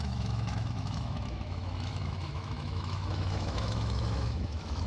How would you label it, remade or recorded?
remade